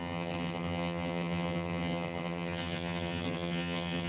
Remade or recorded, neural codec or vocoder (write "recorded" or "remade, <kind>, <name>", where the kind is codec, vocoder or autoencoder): remade, vocoder, HiFi-GAN